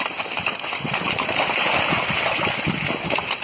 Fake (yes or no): no